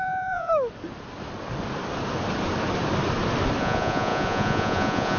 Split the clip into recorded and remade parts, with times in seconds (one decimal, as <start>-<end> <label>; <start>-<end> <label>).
0.0-0.5 remade; 0.5-3.6 recorded; 3.6-5.2 remade